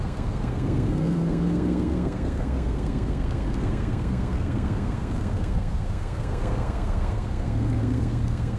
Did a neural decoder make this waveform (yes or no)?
yes